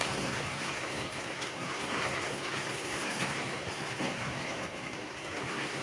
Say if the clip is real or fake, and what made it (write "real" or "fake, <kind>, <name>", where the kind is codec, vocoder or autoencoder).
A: fake, codec, SNAC